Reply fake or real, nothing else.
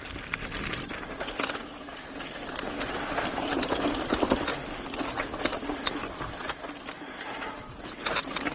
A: real